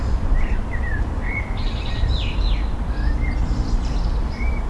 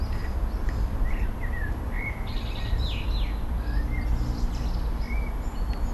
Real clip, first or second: second